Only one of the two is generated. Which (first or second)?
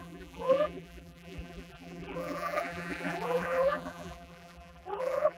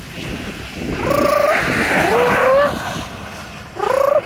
first